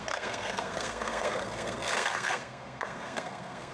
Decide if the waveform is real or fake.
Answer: fake